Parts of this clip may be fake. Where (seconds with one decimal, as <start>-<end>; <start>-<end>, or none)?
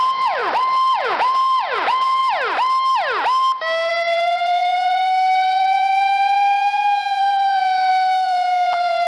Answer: 0.0-0.4; 1.0-2.2; 3.9-9.1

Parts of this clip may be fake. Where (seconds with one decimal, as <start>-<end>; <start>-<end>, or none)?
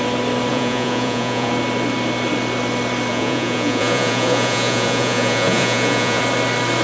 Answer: 0.5-1.5; 3.1-6.2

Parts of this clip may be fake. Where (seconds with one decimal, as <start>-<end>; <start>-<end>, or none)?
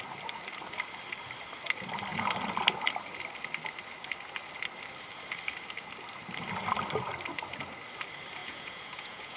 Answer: 8.4-9.4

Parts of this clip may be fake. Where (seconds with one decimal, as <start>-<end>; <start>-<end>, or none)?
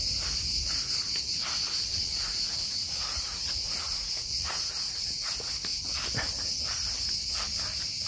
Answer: 1.9-5.3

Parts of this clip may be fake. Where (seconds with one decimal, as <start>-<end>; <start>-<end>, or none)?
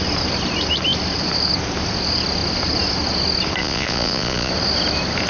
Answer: 3.6-4.5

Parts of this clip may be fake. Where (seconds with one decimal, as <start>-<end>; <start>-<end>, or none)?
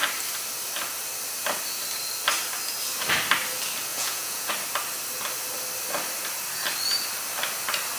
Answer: 3.9-4.5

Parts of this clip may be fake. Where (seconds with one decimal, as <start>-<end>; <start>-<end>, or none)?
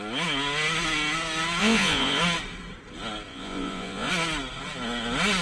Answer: 1.6-2.2; 3.3-4.1